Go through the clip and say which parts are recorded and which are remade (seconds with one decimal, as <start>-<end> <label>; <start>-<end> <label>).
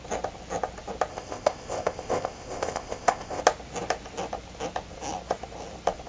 0.0-1.1 recorded; 1.1-3.4 remade; 3.4-6.1 recorded